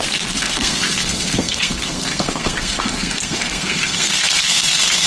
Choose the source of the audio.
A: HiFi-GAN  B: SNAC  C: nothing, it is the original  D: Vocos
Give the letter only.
B